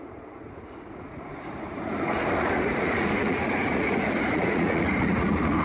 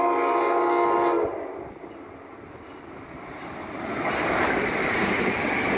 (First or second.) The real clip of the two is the second